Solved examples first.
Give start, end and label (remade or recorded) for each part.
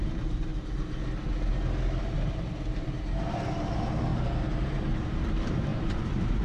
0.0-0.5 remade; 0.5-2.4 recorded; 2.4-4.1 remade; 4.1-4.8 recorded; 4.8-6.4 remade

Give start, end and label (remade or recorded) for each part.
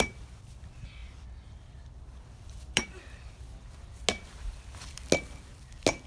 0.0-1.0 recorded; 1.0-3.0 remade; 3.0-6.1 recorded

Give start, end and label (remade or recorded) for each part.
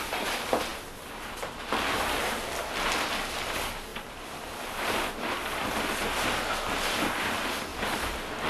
0.0-3.9 recorded; 3.9-5.1 remade; 5.1-7.7 recorded; 7.7-8.5 remade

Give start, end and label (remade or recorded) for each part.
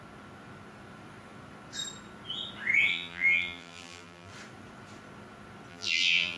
0.0-2.9 recorded; 2.9-4.3 remade; 4.3-5.7 recorded; 5.7-6.4 remade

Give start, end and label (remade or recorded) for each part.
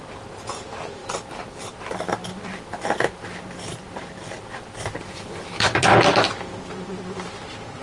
0.0-1.0 recorded; 1.0-1.6 remade; 1.6-2.2 recorded; 2.2-5.8 remade; 5.8-7.8 recorded